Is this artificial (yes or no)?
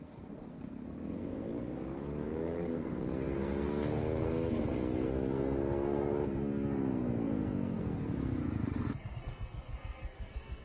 yes